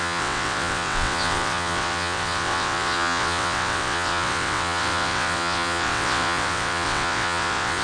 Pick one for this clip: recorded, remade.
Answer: remade